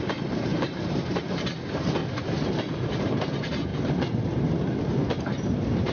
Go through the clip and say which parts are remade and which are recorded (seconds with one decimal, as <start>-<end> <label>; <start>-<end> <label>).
0.0-2.0 remade; 2.0-3.0 recorded; 3.0-3.7 remade; 3.7-5.2 recorded; 5.2-5.9 remade